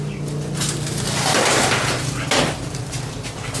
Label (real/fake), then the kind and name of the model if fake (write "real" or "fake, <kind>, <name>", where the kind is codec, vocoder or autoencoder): real